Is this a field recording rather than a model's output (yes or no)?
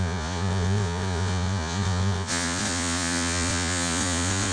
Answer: no